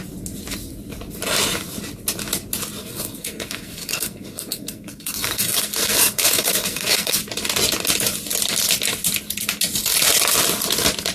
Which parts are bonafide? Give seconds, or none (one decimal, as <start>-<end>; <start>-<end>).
0.0-2.8; 7.2-11.1